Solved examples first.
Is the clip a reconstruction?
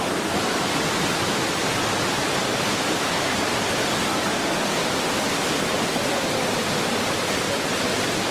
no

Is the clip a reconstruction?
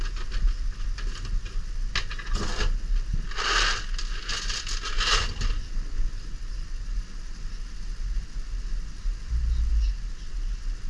no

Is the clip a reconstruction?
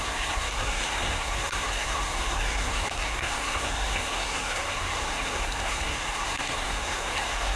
yes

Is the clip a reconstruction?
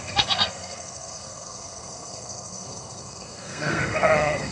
yes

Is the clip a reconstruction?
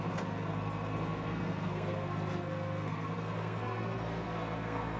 yes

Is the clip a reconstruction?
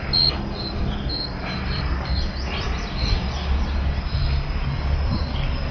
no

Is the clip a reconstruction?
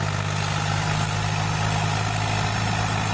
no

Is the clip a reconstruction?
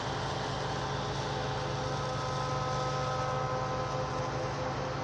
no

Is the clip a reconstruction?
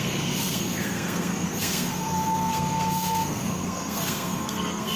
yes